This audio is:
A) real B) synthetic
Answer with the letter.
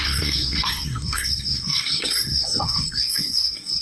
B